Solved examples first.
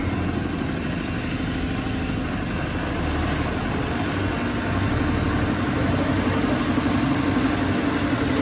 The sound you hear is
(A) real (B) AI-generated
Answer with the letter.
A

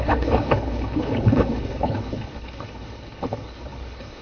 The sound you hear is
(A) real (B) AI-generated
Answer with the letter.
B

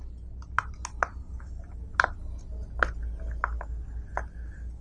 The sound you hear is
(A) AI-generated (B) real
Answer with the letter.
B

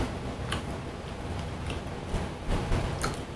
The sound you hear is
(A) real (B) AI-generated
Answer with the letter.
A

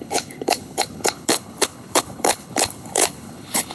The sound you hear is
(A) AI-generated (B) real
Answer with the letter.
A